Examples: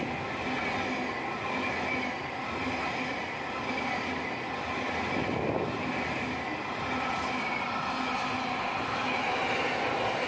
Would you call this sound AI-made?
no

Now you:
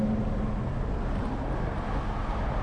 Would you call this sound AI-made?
no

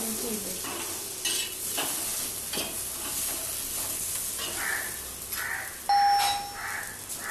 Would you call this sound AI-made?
no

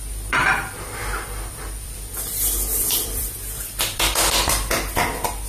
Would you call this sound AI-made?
yes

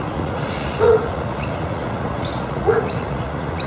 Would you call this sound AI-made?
yes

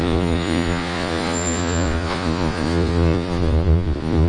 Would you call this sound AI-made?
yes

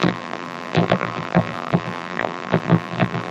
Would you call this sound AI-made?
yes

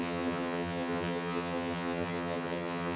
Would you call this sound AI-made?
yes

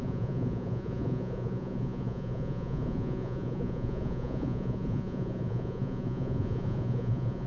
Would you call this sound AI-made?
yes